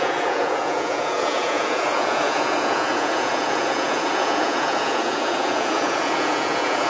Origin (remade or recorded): remade